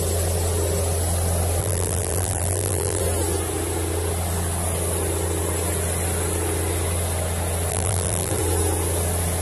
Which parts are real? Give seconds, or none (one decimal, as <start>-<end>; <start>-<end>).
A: 0.0-1.6; 3.0-7.7; 8.4-9.4

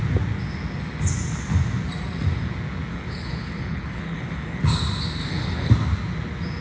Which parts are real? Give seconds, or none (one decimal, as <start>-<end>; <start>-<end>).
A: 0.0-2.9; 4.6-5.2; 5.7-6.6

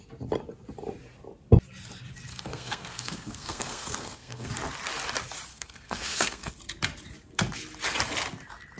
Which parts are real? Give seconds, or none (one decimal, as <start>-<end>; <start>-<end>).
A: 0.0-2.3; 4.5-5.5; 6.5-8.8

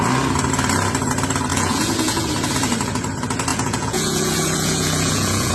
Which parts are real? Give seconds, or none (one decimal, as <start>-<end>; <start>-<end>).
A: 0.0-1.5; 2.3-3.5